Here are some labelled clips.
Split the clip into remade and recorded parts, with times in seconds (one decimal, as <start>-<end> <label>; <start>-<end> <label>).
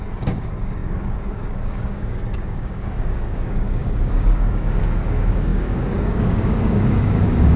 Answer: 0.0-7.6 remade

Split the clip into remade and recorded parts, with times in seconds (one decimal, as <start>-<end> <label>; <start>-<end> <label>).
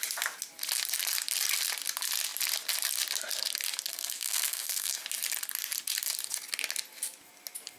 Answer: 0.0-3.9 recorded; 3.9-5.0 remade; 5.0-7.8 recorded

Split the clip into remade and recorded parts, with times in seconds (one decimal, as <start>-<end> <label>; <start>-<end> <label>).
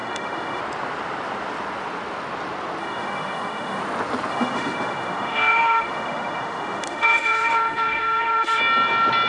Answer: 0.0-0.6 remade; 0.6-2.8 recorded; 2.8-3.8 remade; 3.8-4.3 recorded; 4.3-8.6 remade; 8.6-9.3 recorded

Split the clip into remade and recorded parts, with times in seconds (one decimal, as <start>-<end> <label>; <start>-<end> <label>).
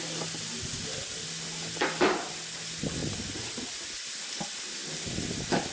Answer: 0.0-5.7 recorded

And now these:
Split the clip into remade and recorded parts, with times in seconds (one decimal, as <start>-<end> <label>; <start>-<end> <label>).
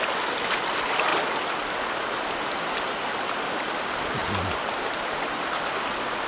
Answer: 0.0-4.2 recorded; 4.2-5.8 remade; 5.8-6.3 recorded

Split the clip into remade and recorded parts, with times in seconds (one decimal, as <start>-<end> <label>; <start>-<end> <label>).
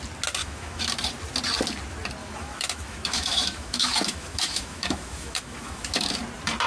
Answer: 0.0-0.4 recorded; 0.4-0.9 remade; 0.9-2.2 recorded; 2.2-6.2 remade; 6.2-6.7 recorded